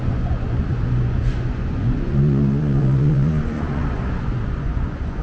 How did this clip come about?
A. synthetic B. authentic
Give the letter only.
A